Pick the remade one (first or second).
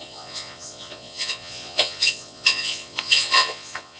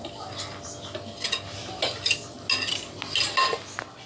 first